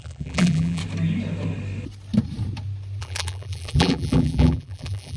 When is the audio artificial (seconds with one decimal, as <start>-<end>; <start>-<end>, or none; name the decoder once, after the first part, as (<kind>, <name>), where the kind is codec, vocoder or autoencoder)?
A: 0.0-0.8 (vocoder, BigVGAN v2); 3.0-5.2